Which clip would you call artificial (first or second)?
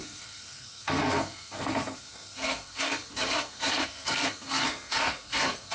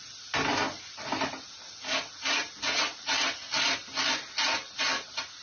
first